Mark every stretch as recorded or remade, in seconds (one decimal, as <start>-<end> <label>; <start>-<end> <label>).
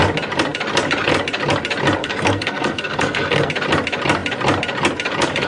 0.0-2.0 recorded; 2.0-3.5 remade; 3.5-5.5 recorded